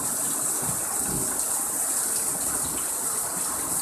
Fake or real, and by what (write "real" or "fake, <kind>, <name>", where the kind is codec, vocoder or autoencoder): real